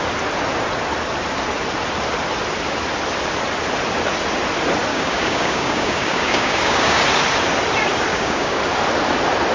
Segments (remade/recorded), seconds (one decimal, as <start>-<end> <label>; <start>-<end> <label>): 0.0-4.9 recorded; 4.9-7.0 remade; 7.0-8.1 recorded; 8.1-8.6 remade; 8.6-9.5 recorded